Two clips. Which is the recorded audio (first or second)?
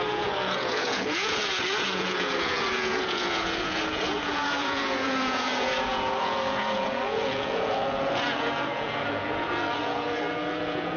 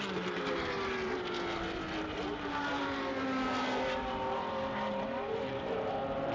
second